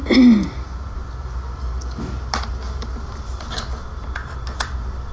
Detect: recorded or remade recorded